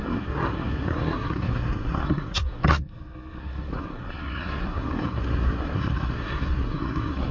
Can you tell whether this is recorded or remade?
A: remade